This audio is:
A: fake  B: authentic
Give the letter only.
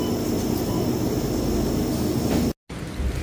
B